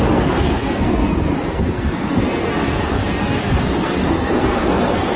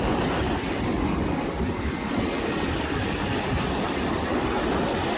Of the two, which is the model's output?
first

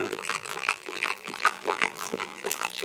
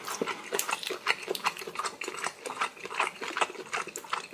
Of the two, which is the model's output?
first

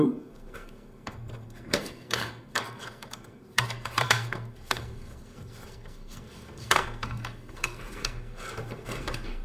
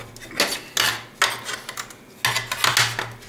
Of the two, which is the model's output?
first